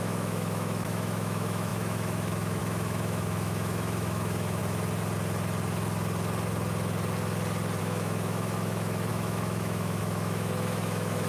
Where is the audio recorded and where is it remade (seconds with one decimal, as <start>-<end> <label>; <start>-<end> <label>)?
0.0-4.6 remade; 4.6-7.8 recorded; 7.8-11.3 remade